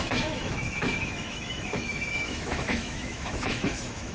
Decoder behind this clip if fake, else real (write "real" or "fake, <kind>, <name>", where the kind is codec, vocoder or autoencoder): fake, autoencoder, DAC-VAE